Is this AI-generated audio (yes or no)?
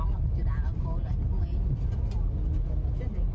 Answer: no